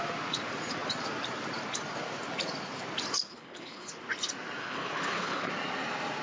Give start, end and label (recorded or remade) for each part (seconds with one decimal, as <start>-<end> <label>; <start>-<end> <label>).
0.0-3.3 recorded; 3.3-4.0 remade; 4.0-4.6 recorded; 4.6-5.5 remade; 5.5-6.2 recorded